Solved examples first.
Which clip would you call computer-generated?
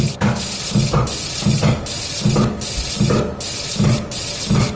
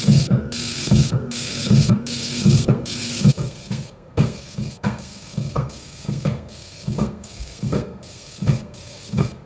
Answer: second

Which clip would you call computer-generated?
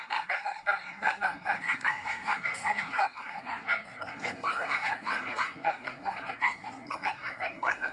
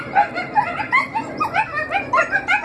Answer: first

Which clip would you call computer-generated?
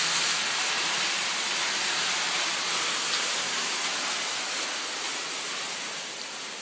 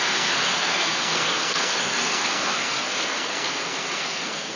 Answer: second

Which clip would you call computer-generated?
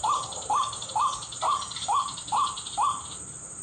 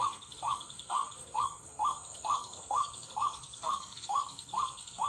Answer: second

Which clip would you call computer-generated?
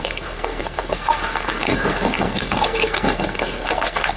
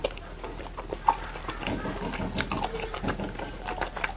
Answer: first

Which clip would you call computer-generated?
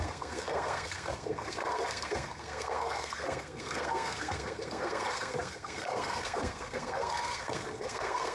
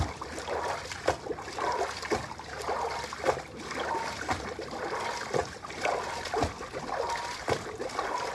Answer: first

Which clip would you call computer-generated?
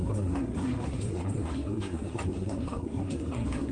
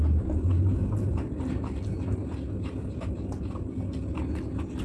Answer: first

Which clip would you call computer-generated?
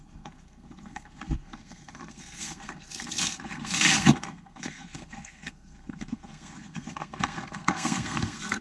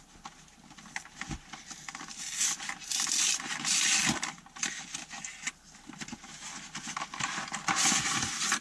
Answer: first